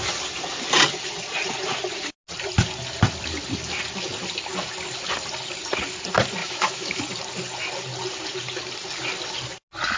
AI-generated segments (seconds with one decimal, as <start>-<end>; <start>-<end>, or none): 6.4-7.0